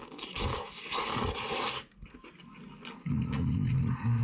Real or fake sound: real